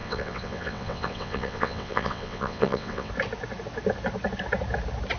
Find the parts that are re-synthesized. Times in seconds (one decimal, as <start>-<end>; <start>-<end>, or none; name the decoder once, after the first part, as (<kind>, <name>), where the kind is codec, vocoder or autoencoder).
0.0-3.1 (vocoder, WaveNeXt)